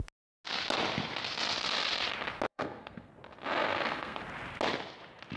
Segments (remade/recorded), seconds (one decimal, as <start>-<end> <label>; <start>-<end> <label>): 0.0-2.5 recorded; 2.5-3.1 remade; 3.1-3.6 recorded; 3.6-4.2 remade; 4.2-5.4 recorded